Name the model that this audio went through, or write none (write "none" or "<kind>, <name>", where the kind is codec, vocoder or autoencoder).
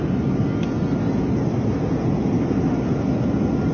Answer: none